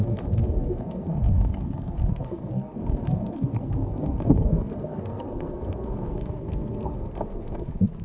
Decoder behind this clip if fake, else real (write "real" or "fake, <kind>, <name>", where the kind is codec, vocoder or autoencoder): fake, codec, SNAC